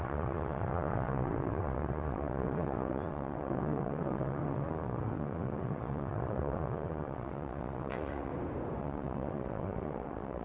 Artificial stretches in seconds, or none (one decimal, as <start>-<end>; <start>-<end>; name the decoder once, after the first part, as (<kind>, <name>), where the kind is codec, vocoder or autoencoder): 0.0-8.3 (vocoder, WaveNeXt); 8.8-10.4